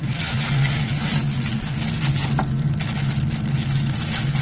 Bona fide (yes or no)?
yes